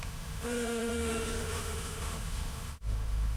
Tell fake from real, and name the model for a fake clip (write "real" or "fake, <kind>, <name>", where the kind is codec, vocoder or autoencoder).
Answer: fake, autoencoder, DAC-VAE